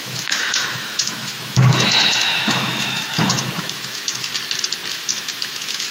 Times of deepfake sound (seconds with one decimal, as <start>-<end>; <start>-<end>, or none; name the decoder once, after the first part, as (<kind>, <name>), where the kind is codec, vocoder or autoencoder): 0.0-4.3 (autoencoder, DAC-VAE); 4.9-5.9